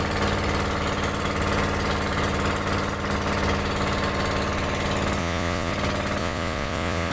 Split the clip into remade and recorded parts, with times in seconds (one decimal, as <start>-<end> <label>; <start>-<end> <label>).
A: 0.0-5.2 recorded; 5.2-5.7 remade; 5.7-6.2 recorded; 6.2-7.1 remade